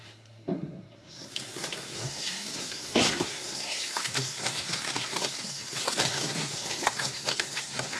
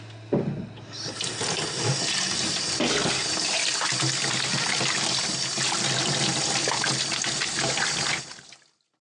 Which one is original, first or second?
second